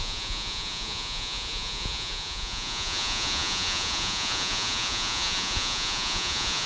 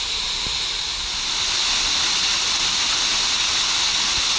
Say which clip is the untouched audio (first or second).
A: second